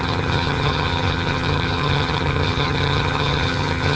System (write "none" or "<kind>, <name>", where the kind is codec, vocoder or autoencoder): vocoder, HiFi-GAN